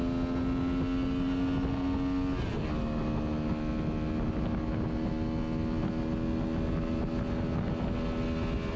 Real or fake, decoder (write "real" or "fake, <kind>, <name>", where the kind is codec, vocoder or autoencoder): real